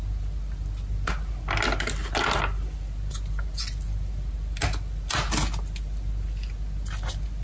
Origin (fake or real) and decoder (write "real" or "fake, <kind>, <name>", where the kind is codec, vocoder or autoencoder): real